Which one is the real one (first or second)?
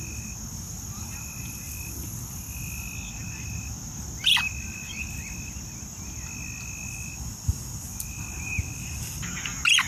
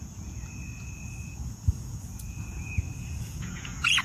first